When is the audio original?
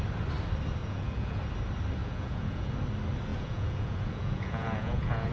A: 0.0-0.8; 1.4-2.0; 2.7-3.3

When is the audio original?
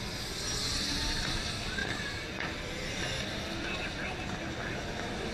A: 0.0-1.8; 3.0-5.3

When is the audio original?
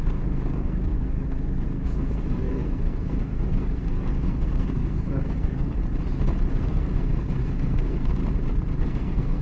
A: 5.8-6.5; 8.2-8.8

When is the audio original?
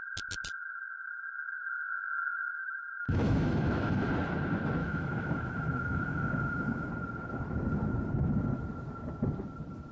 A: 0.0-2.6; 4.1-4.8; 6.9-9.9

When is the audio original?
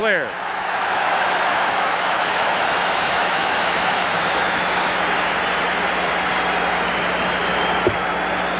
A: 5.0-8.6